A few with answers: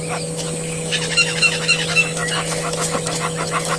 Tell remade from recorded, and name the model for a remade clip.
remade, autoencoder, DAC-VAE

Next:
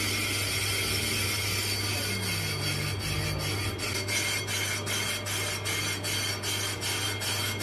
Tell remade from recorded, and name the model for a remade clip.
recorded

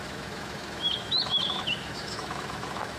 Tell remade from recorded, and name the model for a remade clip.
remade, autoencoder, DAC-VAE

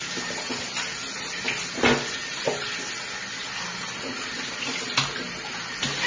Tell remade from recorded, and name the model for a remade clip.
recorded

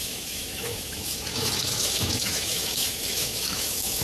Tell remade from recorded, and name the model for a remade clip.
remade, autoencoder, DAC-VAE